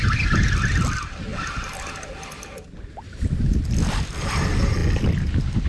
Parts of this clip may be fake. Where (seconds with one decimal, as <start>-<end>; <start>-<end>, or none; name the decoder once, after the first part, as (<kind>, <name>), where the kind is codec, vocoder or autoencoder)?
none